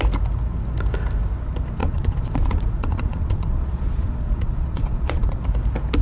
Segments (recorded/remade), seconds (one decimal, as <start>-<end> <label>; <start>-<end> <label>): 0.0-1.8 recorded; 1.8-5.4 remade; 5.4-6.0 recorded